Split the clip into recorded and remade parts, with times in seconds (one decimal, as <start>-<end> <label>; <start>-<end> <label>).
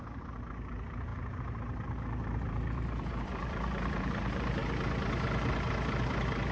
0.0-4.6 remade; 4.6-6.5 recorded